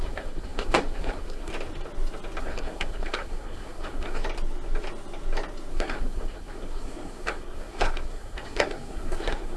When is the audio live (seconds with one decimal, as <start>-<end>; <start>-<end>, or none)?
1.5-2.4; 4.2-5.7